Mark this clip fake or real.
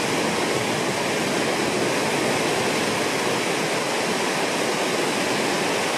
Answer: real